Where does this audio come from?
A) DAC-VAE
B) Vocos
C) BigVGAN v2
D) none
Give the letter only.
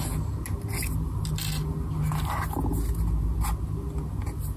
D